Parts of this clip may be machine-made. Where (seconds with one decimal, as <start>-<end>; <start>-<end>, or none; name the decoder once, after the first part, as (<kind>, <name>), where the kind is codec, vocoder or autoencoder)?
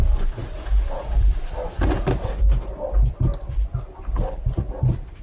3.3-5.2 (vocoder, BigVGAN v2)